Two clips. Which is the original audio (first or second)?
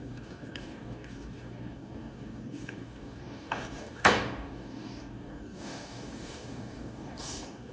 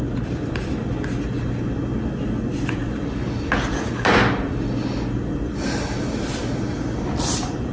second